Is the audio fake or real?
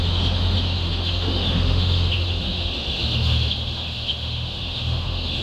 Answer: fake